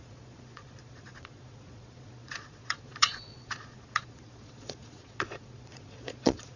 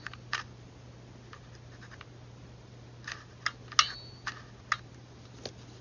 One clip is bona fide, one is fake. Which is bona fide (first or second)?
second